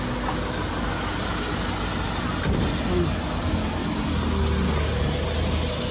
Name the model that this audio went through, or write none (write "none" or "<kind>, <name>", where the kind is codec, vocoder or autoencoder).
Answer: none